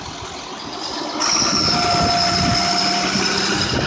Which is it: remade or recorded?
recorded